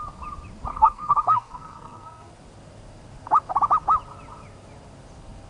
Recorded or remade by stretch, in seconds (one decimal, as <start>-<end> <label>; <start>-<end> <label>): 0.0-0.7 recorded; 0.7-2.3 remade; 2.3-5.5 recorded